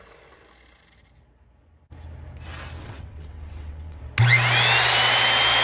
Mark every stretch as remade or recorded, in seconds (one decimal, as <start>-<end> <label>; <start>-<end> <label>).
0.0-2.8 recorded; 2.8-4.0 remade; 4.0-5.6 recorded